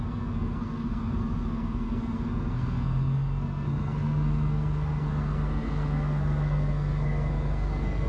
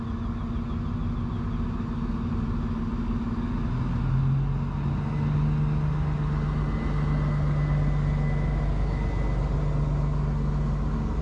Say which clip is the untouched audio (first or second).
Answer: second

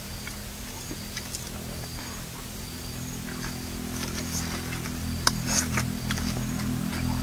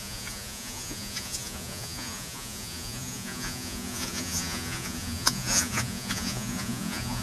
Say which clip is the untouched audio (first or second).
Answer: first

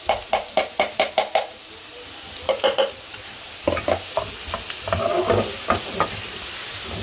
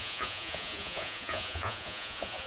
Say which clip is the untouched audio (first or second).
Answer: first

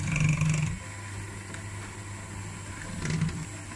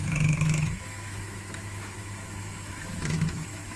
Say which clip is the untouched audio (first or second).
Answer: first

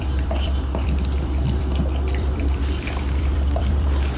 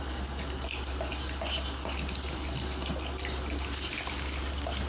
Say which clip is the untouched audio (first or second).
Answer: second